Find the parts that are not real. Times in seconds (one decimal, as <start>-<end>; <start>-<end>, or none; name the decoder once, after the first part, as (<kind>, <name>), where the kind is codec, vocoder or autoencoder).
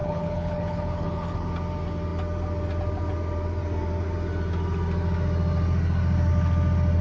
0.0-1.5 (codec, HILCodec)